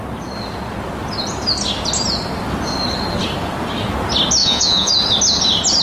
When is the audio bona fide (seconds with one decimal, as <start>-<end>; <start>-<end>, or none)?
0.0-4.4; 4.9-5.8